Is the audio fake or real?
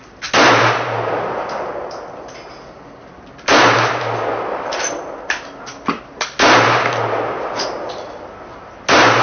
real